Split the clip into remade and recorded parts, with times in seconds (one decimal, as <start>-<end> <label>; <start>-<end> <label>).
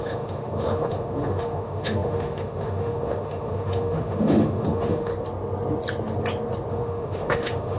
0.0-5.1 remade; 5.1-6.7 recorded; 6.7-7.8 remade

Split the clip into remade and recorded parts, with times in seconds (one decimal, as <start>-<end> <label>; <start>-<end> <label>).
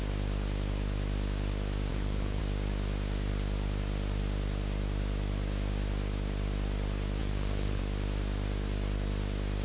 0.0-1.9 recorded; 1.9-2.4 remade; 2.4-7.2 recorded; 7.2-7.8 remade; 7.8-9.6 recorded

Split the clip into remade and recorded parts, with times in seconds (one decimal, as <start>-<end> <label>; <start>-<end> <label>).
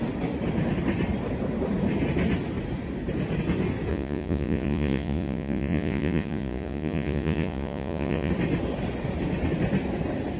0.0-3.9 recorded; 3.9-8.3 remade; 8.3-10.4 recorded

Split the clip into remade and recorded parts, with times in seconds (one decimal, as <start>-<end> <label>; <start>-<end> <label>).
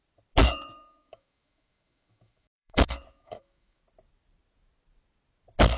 0.0-0.4 recorded; 0.4-3.8 remade; 3.8-5.8 recorded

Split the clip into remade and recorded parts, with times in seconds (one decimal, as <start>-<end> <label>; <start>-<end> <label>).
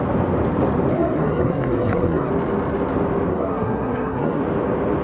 0.0-0.9 recorded; 0.9-2.3 remade; 2.3-3.3 recorded; 3.3-4.4 remade; 4.4-5.0 recorded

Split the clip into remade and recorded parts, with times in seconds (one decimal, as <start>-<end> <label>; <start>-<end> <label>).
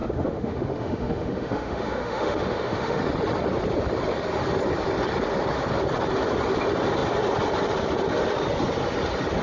0.0-3.0 remade; 3.0-9.4 recorded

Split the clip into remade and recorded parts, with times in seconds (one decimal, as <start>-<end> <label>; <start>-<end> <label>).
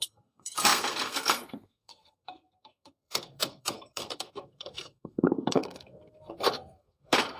0.0-7.4 remade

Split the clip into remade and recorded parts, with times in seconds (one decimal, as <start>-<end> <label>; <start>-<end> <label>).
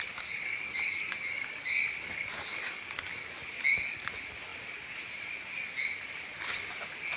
0.0-0.5 recorded; 0.5-1.6 remade; 1.6-2.5 recorded; 2.5-3.3 remade; 3.3-7.2 recorded